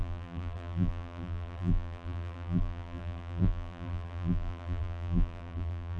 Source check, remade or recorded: remade